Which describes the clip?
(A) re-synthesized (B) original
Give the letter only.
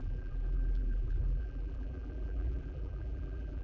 A